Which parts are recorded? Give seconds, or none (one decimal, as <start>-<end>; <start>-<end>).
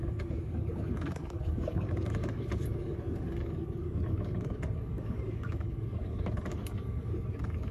none